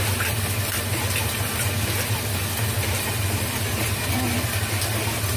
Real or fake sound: real